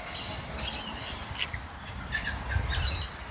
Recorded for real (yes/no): yes